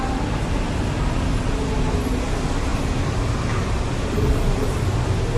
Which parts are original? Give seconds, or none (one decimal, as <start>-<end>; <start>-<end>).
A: 0.0-5.4